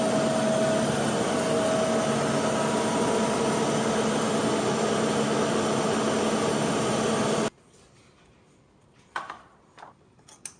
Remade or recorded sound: recorded